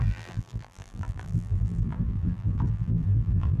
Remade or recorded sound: remade